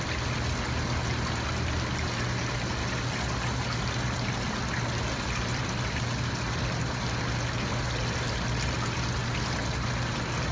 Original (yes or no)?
yes